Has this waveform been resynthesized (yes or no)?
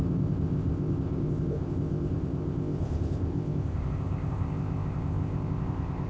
yes